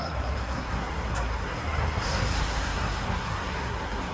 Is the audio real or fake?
fake